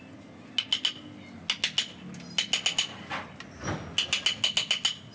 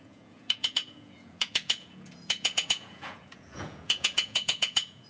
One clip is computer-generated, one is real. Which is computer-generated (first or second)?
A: second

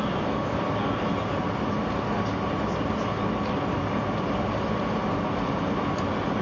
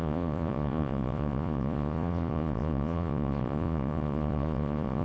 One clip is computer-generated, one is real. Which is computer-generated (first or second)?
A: second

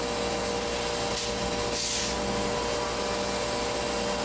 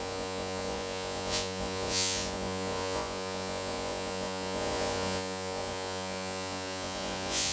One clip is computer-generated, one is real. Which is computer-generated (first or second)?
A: second